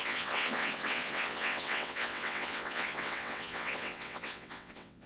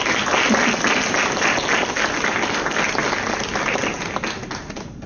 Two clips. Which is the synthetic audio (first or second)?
first